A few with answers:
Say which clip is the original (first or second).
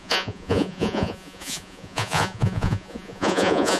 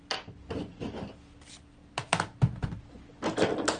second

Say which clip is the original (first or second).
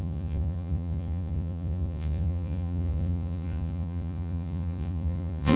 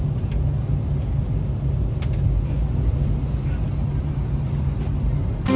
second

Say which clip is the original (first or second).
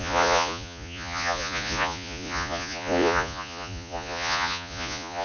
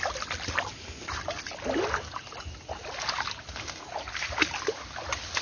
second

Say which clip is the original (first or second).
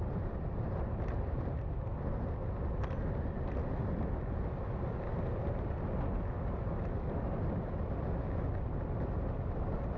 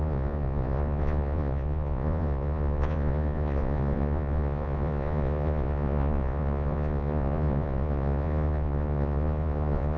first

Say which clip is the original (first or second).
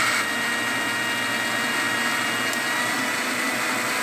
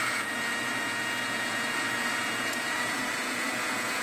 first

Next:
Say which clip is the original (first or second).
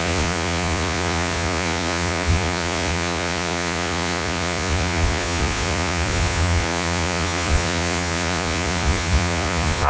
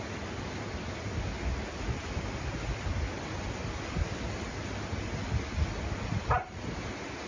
second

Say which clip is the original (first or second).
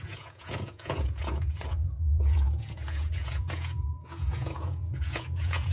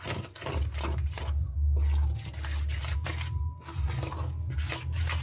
second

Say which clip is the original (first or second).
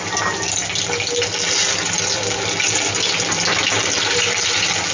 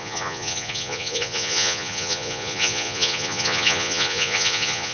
first